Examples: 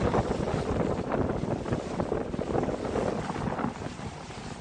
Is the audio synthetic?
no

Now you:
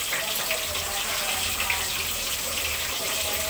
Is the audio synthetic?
yes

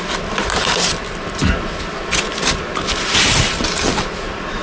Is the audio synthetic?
no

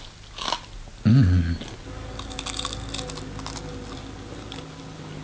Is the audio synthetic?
no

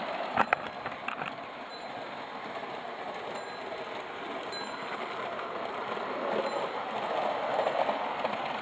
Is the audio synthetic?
no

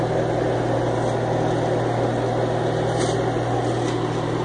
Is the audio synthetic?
no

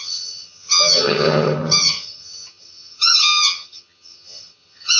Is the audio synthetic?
yes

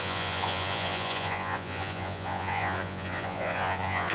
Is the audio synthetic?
yes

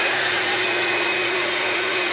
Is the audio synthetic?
yes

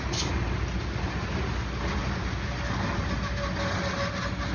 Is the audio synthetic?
no